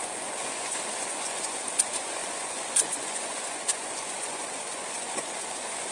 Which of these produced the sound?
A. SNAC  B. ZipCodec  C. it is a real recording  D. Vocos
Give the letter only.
D